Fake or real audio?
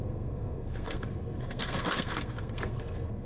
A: fake